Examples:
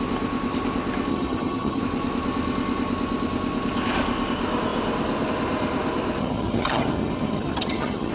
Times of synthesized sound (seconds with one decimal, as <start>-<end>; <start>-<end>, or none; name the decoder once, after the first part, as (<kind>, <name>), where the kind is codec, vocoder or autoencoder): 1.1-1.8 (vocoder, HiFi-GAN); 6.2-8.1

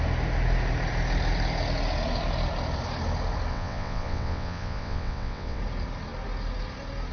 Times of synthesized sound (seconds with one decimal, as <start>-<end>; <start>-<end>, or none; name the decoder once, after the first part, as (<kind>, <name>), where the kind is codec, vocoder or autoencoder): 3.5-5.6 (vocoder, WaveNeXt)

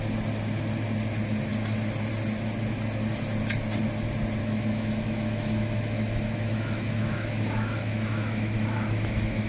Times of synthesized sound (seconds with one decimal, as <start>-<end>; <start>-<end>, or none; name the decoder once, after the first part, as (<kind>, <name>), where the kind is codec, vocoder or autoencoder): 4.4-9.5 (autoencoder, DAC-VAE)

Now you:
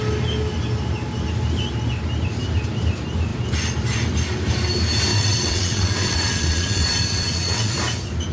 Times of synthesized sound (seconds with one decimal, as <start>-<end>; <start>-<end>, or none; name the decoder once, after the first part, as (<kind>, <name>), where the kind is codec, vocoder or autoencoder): 5.1-7.7 (vocoder, WaveNeXt)